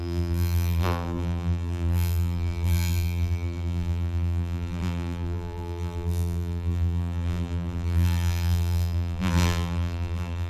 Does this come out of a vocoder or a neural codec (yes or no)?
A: yes